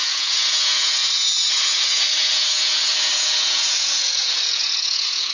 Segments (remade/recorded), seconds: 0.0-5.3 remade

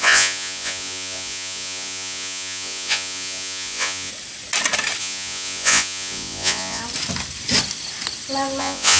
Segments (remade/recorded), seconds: 0.0-4.1 remade; 4.1-5.0 recorded; 5.0-6.8 remade; 6.8-8.6 recorded; 8.6-9.0 remade

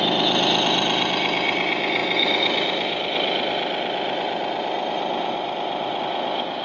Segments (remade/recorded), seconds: 0.0-6.6 recorded

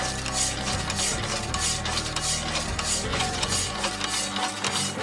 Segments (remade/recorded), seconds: 0.0-3.1 recorded; 3.1-3.9 remade; 3.9-5.0 recorded

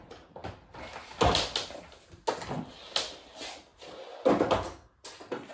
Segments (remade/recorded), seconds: 0.0-5.5 recorded

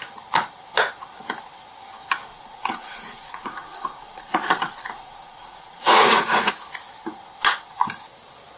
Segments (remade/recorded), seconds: 0.0-2.3 recorded; 2.3-6.5 remade; 6.5-8.6 recorded

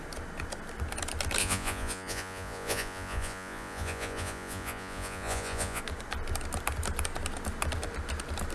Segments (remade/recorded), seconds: 0.0-1.4 recorded; 1.4-5.8 remade; 5.8-8.5 recorded

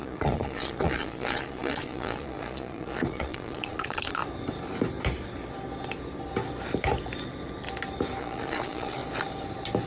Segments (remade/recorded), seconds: 0.0-4.2 remade; 4.2-8.2 recorded; 8.2-9.0 remade; 9.0-9.9 recorded